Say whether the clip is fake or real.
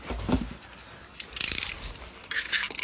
real